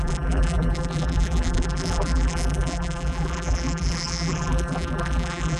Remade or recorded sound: remade